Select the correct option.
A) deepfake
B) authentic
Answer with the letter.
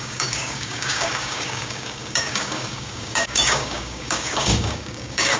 A